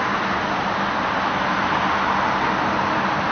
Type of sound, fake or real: real